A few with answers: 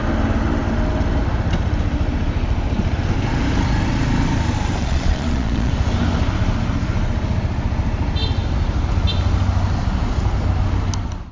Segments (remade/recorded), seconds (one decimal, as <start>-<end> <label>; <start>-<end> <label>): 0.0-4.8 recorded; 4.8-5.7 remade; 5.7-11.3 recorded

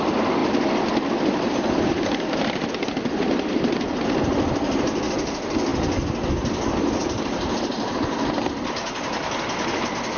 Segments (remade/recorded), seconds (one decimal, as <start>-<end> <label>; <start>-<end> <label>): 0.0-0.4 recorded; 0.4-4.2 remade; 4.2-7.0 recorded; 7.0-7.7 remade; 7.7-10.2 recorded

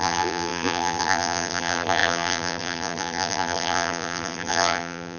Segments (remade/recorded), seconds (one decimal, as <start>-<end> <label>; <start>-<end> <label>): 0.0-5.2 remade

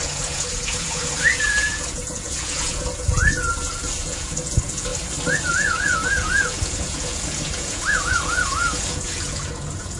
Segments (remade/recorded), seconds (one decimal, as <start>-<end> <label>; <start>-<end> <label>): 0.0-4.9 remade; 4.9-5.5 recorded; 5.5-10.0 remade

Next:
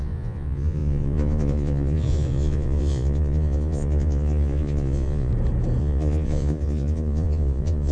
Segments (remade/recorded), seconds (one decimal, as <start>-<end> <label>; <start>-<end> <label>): 0.0-5.3 remade; 5.3-5.8 recorded; 5.8-7.9 remade

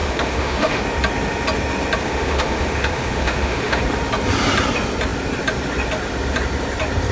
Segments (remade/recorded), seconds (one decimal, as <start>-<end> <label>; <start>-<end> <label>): 0.0-0.8 remade; 0.8-2.0 recorded; 2.0-3.8 remade; 3.8-7.1 recorded